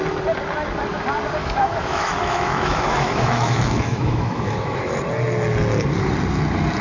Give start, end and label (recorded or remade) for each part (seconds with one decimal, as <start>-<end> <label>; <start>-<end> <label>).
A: 0.0-1.4 recorded; 1.4-4.8 remade; 4.8-6.8 recorded